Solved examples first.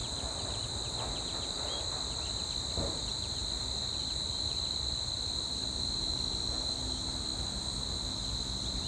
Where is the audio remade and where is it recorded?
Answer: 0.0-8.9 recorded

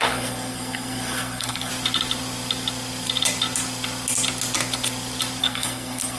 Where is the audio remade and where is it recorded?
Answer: 0.0-1.7 remade; 1.7-5.4 recorded; 5.4-6.2 remade